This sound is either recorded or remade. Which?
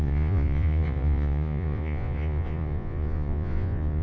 remade